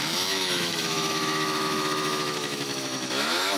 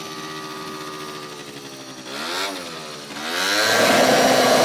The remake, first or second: first